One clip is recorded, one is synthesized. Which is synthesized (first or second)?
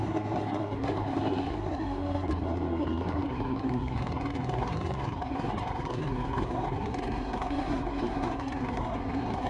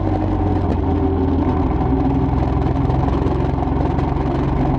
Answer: first